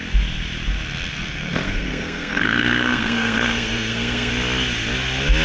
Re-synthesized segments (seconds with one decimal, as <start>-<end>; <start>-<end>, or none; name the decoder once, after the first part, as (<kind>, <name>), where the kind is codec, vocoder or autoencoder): 1.1-4.3 (codec, SNAC)